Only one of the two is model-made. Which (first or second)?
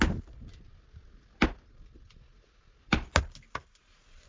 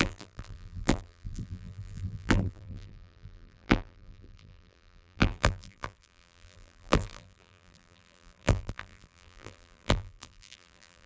second